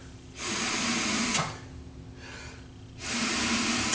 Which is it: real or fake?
real